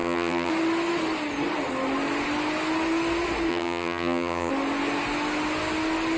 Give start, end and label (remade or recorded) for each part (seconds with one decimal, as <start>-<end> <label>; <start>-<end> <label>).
0.0-0.5 remade; 0.5-3.5 recorded; 3.5-4.5 remade; 4.5-6.2 recorded

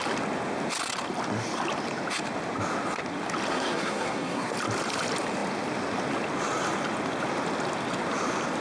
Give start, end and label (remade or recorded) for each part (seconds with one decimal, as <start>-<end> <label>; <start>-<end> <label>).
0.0-3.5 recorded; 3.5-4.5 remade; 4.5-8.6 recorded